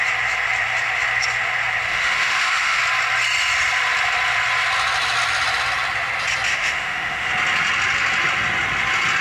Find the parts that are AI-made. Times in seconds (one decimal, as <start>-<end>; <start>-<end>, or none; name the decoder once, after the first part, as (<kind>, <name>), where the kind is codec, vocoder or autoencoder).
1.9-2.8 (autoencoder, DAC-VAE); 6.5-7.3

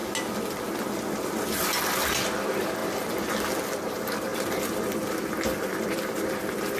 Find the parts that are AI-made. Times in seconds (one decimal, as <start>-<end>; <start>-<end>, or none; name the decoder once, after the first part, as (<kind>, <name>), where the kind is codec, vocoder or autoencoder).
none

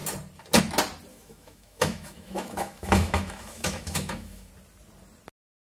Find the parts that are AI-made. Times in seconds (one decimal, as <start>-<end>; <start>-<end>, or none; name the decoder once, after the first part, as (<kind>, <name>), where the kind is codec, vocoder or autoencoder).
1.1-4.5 (autoencoder, DAC-VAE)

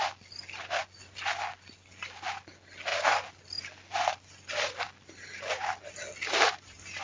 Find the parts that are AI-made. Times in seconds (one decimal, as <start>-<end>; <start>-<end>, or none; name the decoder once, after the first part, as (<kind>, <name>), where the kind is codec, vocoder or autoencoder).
none

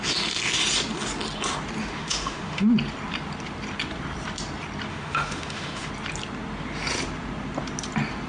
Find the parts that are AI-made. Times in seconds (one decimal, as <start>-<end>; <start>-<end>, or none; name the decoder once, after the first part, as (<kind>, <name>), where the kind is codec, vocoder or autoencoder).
1.8-2.6 (autoencoder, DAC-VAE); 4.9-5.9

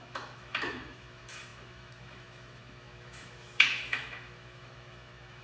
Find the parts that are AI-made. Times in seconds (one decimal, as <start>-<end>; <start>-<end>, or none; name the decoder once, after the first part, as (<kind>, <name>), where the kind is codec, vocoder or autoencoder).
0.0-5.4 (autoencoder, DAC-VAE)

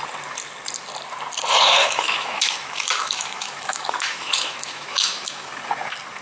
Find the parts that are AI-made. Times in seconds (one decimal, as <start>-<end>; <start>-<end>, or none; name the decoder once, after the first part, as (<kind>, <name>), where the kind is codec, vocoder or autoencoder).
1.8-5.5 (autoencoder, DAC-VAE)